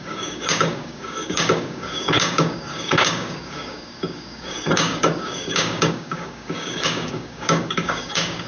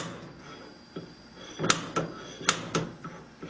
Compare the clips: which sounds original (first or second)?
second